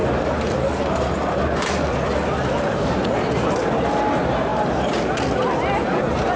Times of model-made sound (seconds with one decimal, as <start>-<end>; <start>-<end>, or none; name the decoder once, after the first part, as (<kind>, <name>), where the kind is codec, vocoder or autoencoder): 0.0-3.8 (vocoder, BigVGAN v2)